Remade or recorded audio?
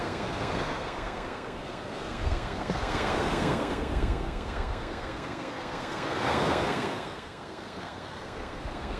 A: remade